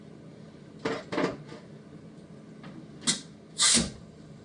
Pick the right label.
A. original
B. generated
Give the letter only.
A